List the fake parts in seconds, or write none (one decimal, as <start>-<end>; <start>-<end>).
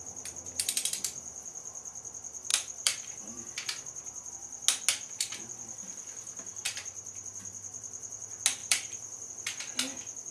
2.5-4.3; 6.6-8.1; 8.6-9.3